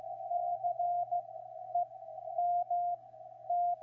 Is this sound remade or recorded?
remade